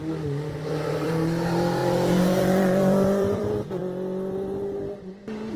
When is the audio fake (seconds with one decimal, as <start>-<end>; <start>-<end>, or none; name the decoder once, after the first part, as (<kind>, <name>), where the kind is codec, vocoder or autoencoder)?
0.6-1.1 (vocoder, BigVGAN v2); 1.8-3.8